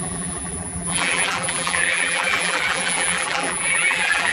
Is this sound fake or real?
fake